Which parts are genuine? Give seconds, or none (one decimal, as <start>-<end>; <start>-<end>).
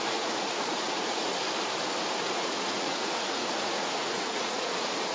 1.2-2.3